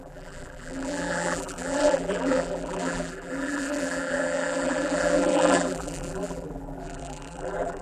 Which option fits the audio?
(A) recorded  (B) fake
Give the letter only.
B